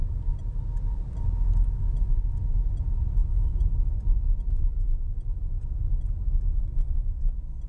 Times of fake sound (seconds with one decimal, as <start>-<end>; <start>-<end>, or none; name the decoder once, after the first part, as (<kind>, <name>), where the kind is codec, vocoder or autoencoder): none